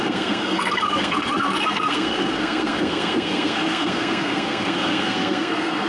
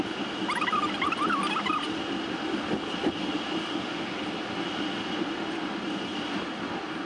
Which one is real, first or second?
second